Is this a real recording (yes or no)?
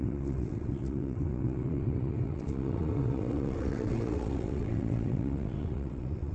no